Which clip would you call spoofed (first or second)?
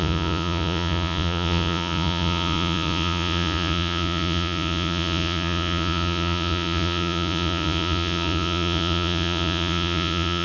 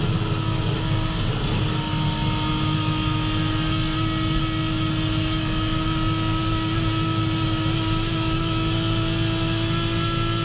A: first